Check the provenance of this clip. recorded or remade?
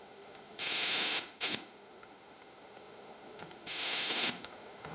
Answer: remade